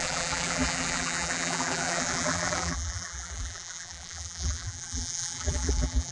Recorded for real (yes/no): no